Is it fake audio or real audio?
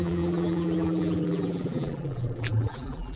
fake